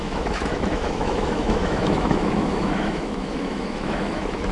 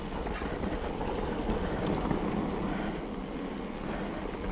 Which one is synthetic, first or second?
first